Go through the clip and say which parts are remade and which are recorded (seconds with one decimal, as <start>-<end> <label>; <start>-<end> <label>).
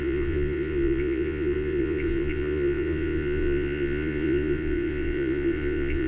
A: 0.0-6.1 remade